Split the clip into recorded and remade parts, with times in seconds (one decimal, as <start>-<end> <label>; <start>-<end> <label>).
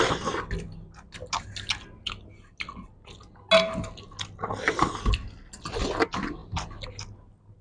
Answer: 0.0-7.6 recorded